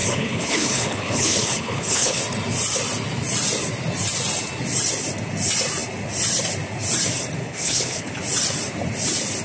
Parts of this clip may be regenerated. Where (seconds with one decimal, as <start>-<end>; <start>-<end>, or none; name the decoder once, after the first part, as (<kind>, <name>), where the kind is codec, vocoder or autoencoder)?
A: 0.0-2.2 (codec, HILCodec); 7.4-8.1